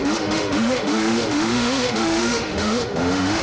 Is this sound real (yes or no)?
no